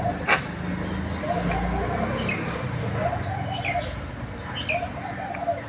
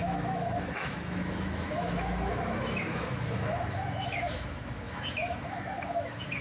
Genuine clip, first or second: first